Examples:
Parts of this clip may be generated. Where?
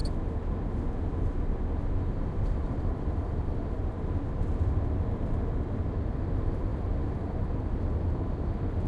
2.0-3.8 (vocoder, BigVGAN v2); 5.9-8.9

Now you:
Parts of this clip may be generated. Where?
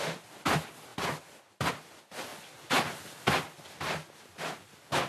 none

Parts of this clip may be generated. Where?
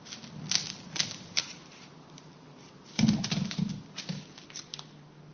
0.6-3.8 (vocoder, BigVGAN v2)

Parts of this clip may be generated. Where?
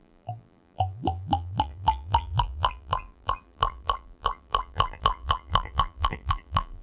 0.0-6.8 (vocoder, BigVGAN v2)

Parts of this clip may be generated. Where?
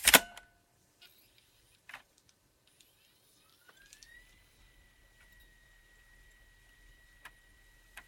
0.0-8.1 (vocoder, BigVGAN v2)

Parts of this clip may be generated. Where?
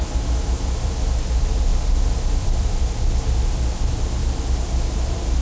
0.0-5.4 (vocoder, BigVGAN v2)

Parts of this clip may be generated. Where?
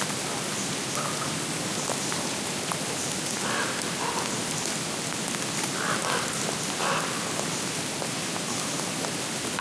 0.0-9.6 (vocoder, BigVGAN v2)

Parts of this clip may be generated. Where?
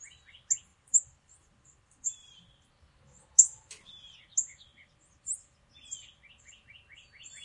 0.7-2.7 (vocoder, BigVGAN v2); 4.7-5.6